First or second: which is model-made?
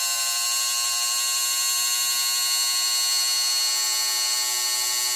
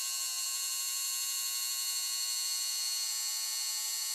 second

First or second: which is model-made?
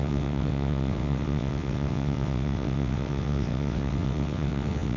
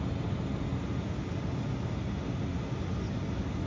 first